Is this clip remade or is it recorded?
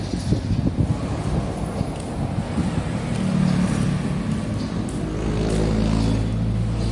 recorded